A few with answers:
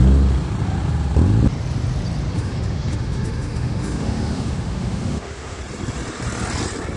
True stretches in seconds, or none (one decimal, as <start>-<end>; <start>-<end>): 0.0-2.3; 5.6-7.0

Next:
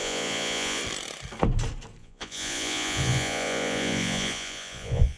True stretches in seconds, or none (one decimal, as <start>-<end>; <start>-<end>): 0.8-2.0

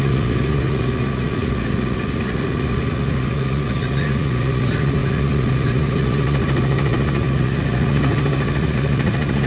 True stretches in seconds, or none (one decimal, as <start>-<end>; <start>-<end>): none

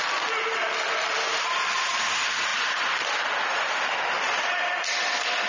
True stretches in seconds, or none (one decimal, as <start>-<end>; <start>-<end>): 0.0-5.5

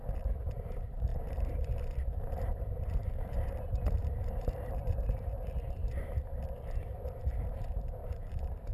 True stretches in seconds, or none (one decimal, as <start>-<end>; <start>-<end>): 5.8-7.2